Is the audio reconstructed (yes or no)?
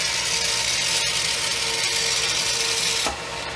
no